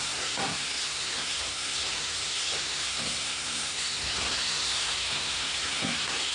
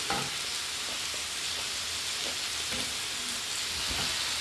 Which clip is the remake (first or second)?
first